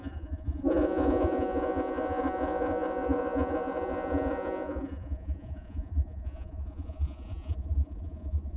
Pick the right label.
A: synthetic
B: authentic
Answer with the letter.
A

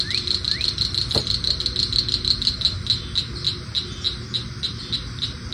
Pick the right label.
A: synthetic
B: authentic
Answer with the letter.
B